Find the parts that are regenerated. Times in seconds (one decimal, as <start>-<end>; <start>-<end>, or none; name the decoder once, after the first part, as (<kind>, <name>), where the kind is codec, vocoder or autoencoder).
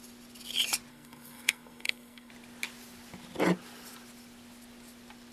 0.9-2.3 (codec, SNAC)